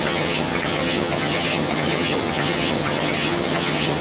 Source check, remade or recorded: remade